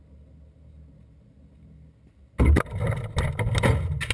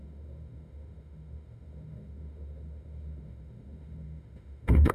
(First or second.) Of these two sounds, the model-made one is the second